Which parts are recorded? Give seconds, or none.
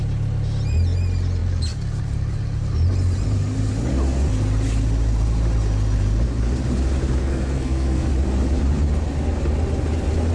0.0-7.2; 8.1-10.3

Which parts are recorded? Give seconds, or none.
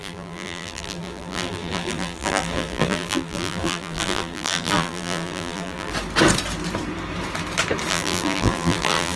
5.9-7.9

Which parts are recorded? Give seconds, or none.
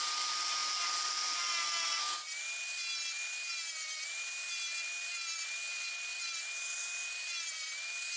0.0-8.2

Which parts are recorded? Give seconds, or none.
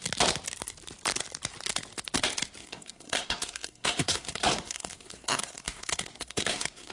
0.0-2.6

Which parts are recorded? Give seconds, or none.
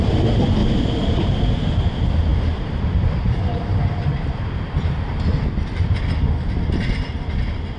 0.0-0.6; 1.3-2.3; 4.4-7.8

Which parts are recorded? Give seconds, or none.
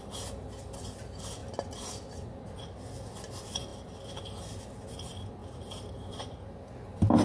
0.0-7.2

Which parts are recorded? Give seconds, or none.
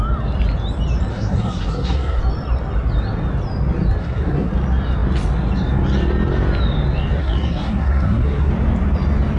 0.0-1.1; 2.2-4.0; 4.5-7.2; 8.5-9.4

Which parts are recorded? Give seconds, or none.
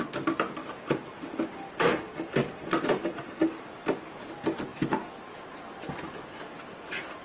0.0-0.6; 3.7-7.2